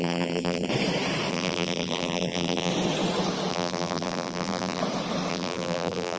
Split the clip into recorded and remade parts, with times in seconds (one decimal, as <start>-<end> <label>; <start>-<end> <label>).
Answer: 0.0-0.7 remade; 0.7-1.3 recorded; 1.3-2.7 remade; 2.7-3.5 recorded; 3.5-4.8 remade; 4.8-5.3 recorded; 5.3-6.2 remade